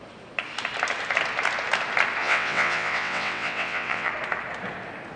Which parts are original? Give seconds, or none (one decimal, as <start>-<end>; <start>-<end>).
0.0-2.2; 4.1-5.2

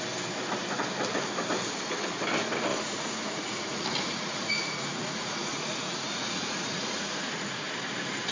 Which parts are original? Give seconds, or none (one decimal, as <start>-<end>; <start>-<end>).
0.0-2.7; 7.7-8.3

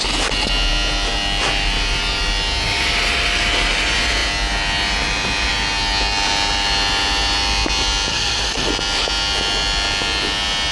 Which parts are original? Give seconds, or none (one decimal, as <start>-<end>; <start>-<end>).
0.0-8.1; 8.7-10.7

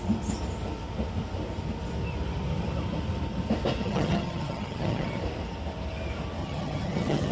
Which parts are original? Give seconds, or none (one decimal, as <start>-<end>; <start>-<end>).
0.0-3.8; 5.2-6.4